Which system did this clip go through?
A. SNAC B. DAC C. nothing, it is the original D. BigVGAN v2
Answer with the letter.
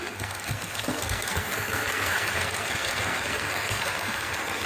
A